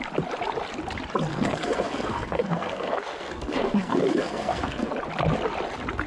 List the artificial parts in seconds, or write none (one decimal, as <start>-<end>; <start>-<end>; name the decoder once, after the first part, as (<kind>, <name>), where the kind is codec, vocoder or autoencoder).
1.3-4.9 (codec, SNAC)